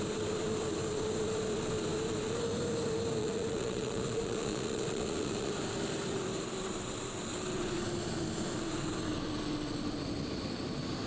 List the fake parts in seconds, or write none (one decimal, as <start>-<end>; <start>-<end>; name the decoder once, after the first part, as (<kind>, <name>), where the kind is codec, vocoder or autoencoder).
3.2-5.5 (vocoder, Vocos)